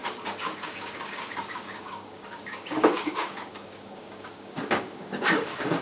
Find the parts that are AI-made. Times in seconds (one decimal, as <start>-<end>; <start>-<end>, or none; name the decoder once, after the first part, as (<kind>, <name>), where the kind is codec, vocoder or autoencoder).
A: 0.0-5.8 (codec, DAC)